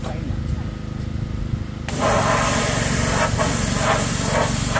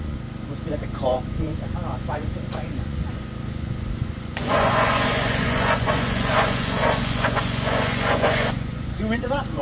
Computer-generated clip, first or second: second